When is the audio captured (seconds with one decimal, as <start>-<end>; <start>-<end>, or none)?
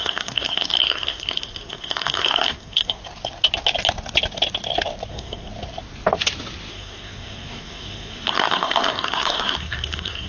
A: 3.0-5.1; 5.5-6.7